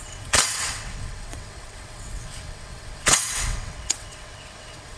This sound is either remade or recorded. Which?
remade